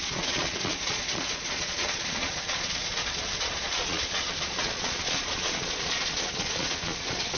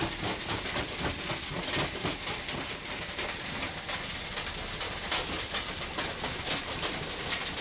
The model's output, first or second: first